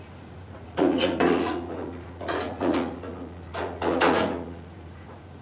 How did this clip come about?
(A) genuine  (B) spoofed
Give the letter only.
B